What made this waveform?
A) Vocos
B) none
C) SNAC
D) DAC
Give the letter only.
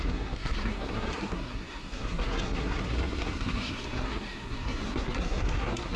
C